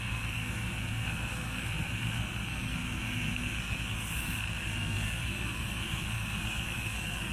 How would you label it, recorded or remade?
remade